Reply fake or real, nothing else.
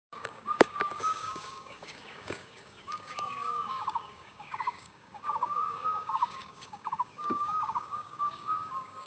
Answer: fake